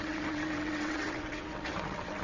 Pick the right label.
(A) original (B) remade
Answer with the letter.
B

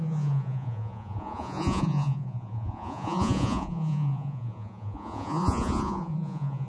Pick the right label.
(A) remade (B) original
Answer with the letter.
A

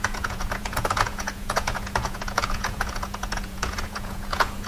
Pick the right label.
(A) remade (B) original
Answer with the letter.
A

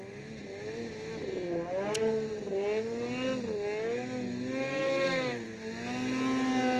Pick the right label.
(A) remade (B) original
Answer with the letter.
B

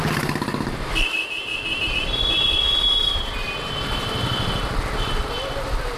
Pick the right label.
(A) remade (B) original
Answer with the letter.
B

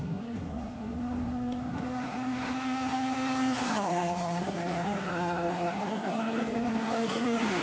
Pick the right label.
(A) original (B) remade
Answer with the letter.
B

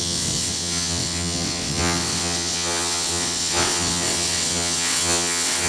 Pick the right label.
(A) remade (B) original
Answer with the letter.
A